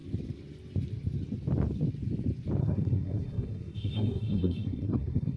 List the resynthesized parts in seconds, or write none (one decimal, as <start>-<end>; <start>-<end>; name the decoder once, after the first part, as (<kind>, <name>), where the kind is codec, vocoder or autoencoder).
2.6-5.4 (codec, SNAC)